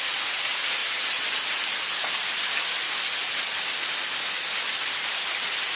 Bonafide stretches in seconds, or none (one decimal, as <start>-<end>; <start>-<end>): 0.0-5.7